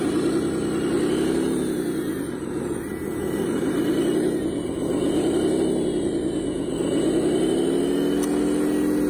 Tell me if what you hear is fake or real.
real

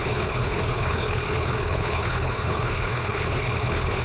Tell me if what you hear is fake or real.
fake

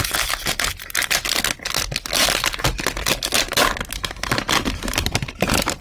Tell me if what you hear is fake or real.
real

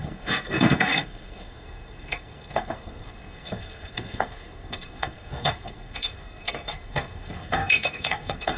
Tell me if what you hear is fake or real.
fake